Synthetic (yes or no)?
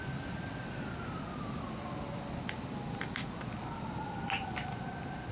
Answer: no